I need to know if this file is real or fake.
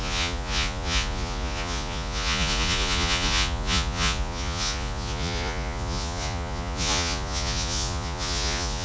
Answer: fake